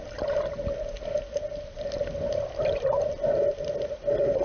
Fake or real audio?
real